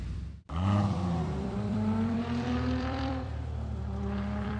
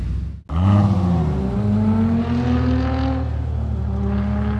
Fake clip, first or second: first